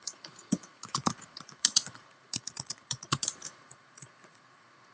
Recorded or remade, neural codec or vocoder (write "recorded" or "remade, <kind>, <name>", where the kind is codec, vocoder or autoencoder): remade, vocoder, Vocos